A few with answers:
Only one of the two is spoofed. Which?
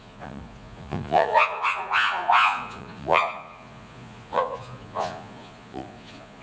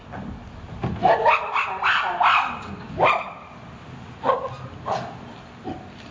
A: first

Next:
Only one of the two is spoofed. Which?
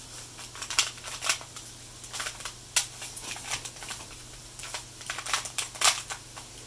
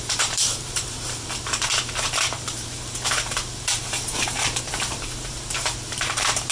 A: second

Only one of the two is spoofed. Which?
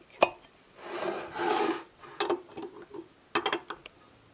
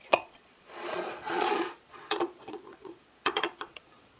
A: second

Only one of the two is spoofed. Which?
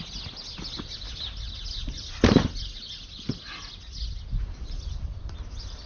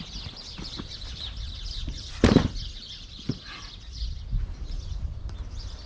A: second